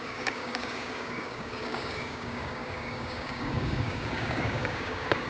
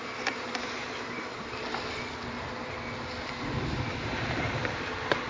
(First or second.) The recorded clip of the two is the second